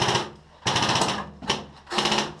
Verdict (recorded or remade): recorded